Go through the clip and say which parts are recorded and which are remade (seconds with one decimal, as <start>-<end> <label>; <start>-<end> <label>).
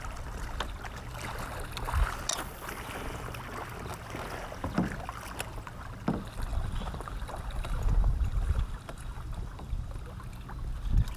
0.0-6.5 recorded; 6.5-10.0 remade; 10.0-11.2 recorded